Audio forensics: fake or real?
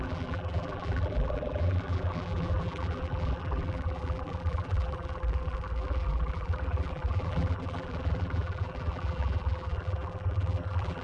fake